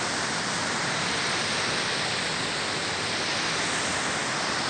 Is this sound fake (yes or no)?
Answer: no